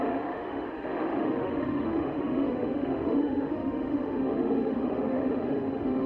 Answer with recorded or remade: remade